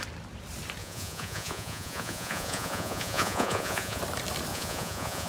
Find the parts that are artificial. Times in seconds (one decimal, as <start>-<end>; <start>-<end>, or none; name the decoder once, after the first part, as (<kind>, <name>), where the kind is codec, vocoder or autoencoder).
0.8-4.0 (vocoder, Vocos); 4.5-5.3